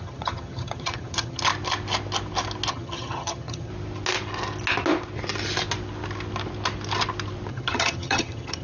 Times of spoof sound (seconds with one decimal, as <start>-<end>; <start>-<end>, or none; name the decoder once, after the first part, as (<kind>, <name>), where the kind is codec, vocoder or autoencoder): 0.0-1.5 (vocoder, HiFi-GAN); 2.7-3.7; 7.5-8.6